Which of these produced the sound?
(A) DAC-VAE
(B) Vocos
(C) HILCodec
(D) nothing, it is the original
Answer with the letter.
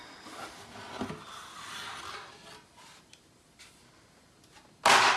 D